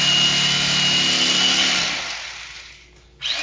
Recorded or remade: recorded